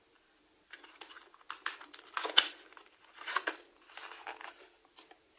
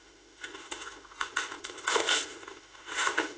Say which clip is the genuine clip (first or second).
first